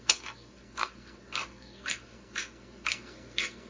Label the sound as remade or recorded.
remade